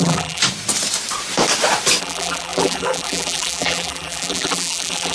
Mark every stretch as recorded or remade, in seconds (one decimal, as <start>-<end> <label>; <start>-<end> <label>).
0.0-0.4 remade; 0.4-2.0 recorded; 2.0-5.1 remade